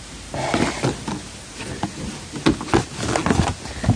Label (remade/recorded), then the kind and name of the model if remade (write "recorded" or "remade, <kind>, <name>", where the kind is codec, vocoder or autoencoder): recorded